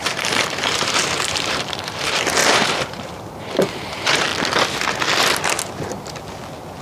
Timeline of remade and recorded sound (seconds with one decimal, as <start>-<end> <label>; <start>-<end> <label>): 0.0-4.3 remade; 4.3-6.8 recorded